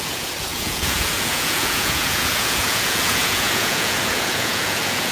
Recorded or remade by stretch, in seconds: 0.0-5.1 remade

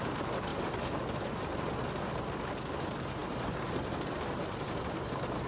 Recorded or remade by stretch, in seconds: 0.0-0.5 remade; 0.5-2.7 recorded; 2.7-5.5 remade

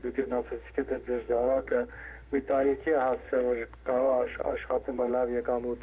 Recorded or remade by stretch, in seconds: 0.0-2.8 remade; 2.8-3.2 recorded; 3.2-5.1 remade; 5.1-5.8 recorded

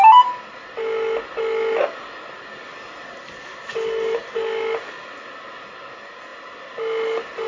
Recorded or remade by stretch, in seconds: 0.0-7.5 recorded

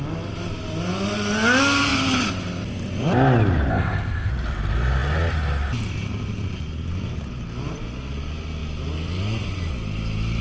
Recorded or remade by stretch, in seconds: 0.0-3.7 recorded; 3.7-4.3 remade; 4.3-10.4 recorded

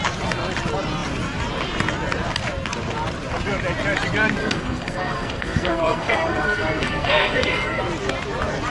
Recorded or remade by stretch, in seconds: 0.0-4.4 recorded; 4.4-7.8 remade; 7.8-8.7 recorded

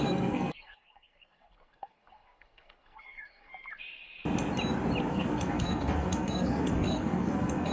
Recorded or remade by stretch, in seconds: 0.0-3.5 remade; 3.5-5.1 recorded; 5.1-7.7 remade

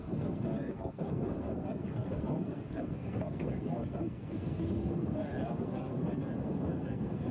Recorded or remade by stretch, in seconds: 0.0-7.3 remade